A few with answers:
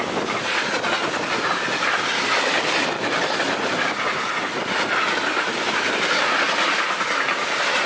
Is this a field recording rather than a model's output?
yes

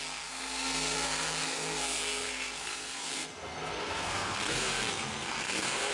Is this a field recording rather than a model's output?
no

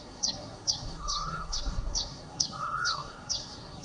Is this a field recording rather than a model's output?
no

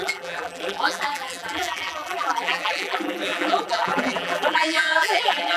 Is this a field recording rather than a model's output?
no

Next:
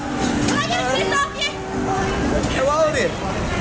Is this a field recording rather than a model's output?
yes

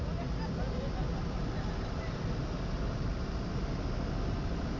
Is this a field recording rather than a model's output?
yes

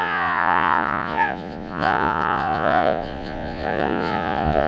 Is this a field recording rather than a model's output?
no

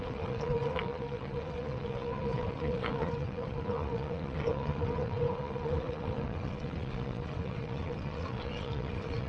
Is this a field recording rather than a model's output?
no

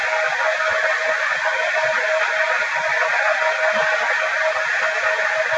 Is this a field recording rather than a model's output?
yes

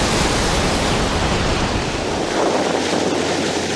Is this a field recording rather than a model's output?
yes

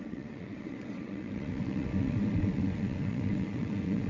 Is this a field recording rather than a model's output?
no